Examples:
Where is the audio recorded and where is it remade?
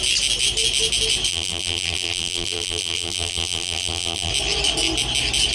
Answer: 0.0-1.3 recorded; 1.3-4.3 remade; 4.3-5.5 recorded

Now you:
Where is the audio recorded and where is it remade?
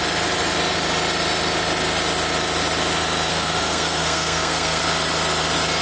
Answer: 0.0-3.3 recorded; 3.3-4.8 remade; 4.8-5.8 recorded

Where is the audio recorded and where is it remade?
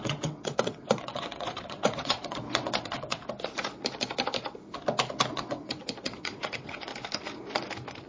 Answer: 0.0-3.2 remade; 3.2-5.3 recorded; 5.3-6.9 remade; 6.9-8.1 recorded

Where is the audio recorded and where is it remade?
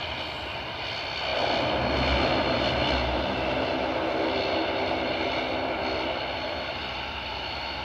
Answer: 0.0-7.8 recorded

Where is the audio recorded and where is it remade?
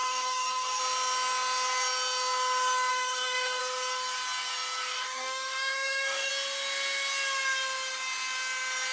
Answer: 0.0-0.8 remade; 0.8-2.9 recorded; 2.9-3.6 remade; 3.6-4.9 recorded; 4.9-6.3 remade; 6.3-8.9 recorded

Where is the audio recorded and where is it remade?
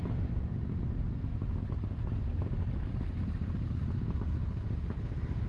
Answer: 0.0-5.5 recorded